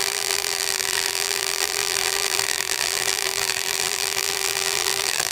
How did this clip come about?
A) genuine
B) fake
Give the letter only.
B